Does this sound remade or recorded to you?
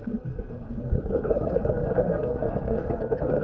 remade